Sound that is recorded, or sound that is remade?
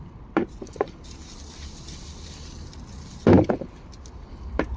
remade